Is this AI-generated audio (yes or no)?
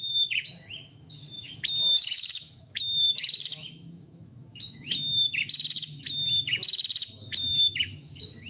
yes